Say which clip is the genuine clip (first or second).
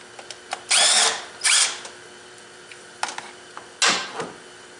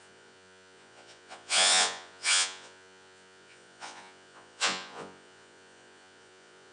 first